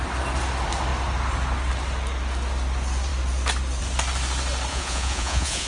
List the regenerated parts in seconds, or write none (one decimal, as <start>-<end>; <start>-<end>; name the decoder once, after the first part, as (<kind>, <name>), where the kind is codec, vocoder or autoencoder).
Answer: 4.7-5.7 (vocoder, Vocos)